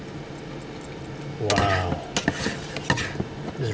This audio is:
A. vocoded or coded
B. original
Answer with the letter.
B